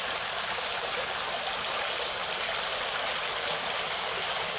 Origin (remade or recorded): recorded